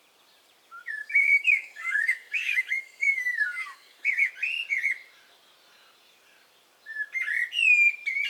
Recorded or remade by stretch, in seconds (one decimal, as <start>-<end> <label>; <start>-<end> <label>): 0.0-1.0 recorded; 1.0-4.3 remade; 4.3-8.3 recorded

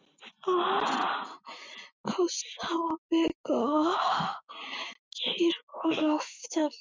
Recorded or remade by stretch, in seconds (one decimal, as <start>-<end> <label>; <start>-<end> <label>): 0.0-3.6 recorded; 3.6-4.5 remade; 4.5-5.7 recorded; 5.7-6.8 remade